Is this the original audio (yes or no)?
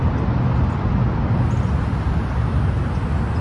yes